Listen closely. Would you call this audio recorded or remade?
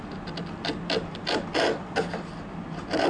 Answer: recorded